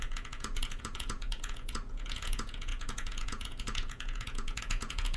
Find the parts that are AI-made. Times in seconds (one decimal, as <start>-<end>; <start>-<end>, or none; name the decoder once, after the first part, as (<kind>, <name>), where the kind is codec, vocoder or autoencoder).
0.0-5.2 (vocoder, Vocos)